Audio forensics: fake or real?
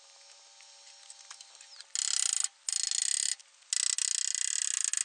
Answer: real